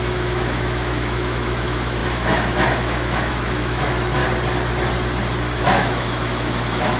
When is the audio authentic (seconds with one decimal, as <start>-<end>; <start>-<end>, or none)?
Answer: 4.2-5.6